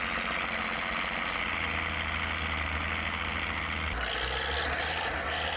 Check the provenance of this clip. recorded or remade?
recorded